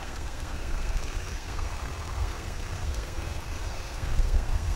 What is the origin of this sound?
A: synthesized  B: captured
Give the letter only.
A